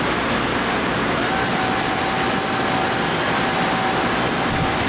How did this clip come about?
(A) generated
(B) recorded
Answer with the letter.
B